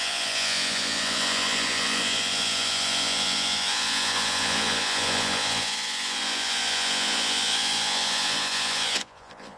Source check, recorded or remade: remade